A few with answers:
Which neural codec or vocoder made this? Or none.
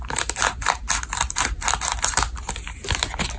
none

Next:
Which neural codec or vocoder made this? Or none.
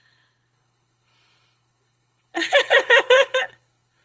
codec, HILCodec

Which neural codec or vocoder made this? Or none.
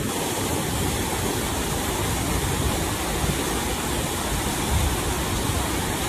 none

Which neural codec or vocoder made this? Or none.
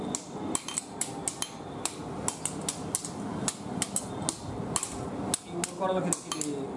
none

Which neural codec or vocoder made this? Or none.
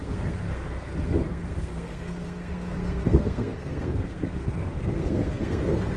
codec, SNAC